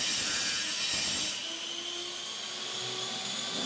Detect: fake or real real